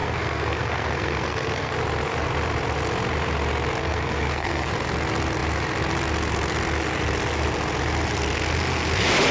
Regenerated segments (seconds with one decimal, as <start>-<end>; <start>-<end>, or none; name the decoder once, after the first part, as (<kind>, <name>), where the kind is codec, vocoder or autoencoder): 0.0-1.7 (codec, SNAC); 3.8-4.7